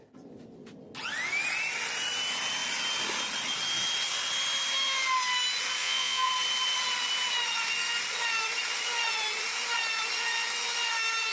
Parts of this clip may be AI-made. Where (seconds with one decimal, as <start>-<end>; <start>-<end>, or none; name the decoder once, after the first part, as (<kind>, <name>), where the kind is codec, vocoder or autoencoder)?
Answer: 5.8-6.3 (vocoder, Vocos)